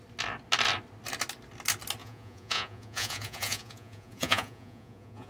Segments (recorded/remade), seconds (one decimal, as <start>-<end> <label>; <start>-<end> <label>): 0.0-2.0 recorded; 2.0-5.3 remade